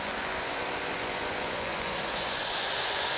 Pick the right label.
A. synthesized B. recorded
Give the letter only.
A